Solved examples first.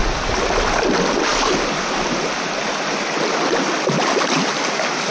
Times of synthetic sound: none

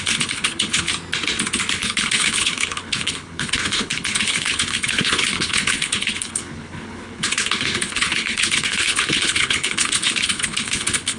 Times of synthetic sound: 0.0-0.9; 1.7-11.2

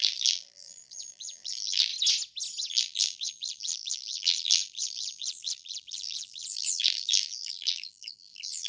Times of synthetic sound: 0.0-1.9; 2.7-8.7

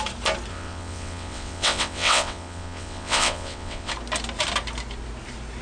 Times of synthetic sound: 0.5-3.9

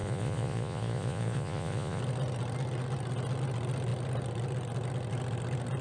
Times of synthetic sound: 0.0-2.0

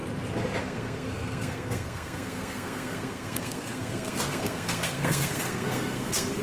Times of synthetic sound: 0.6-6.4

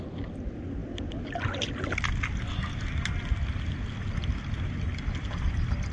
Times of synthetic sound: none